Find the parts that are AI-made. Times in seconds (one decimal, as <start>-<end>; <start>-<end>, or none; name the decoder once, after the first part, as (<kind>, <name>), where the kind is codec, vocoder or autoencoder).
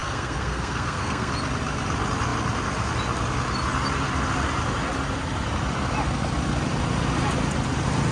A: 0.0-1.3 (codec, SNAC)